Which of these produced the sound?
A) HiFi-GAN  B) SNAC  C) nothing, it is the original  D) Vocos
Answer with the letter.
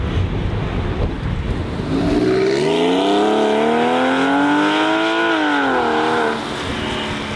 C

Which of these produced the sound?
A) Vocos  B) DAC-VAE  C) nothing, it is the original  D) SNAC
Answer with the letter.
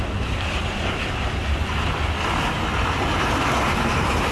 C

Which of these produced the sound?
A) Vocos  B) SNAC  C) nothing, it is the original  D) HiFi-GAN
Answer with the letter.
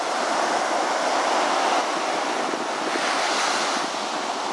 C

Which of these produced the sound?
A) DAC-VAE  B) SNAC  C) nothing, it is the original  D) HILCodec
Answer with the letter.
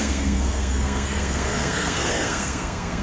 B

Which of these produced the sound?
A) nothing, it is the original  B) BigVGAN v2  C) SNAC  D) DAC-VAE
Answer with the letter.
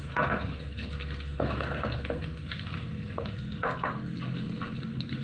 C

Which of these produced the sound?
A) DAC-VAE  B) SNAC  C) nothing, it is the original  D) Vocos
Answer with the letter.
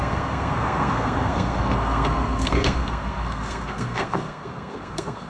B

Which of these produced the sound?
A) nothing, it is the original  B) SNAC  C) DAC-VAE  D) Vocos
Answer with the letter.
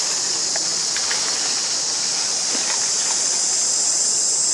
A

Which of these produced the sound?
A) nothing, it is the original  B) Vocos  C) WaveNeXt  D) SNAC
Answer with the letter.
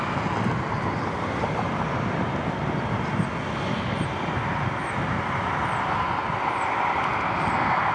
A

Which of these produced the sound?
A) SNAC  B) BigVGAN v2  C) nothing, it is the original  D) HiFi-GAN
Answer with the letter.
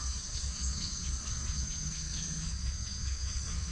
A